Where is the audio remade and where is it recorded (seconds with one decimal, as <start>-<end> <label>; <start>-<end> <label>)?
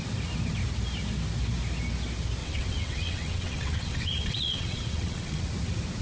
0.0-2.4 recorded; 2.4-5.4 remade; 5.4-6.0 recorded